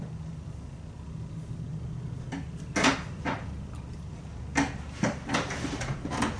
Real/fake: real